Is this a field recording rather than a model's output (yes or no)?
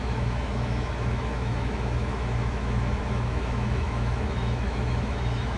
no